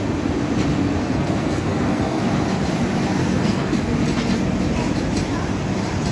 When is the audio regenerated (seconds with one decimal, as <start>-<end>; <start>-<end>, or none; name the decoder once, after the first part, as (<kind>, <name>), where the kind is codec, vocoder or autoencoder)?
1.0-2.2 (codec, SNAC); 3.2-3.7